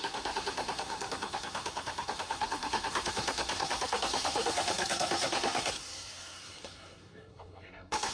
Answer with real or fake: fake